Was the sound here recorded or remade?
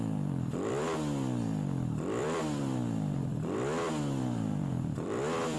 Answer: remade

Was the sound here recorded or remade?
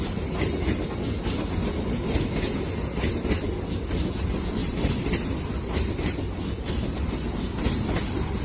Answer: recorded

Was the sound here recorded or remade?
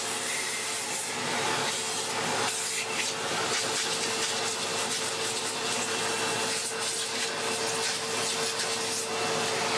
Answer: recorded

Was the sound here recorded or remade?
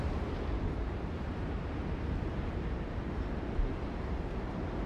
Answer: remade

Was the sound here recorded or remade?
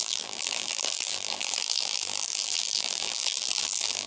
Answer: remade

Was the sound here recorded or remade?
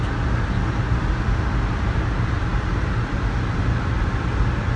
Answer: recorded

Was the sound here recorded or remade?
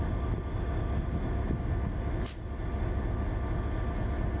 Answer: recorded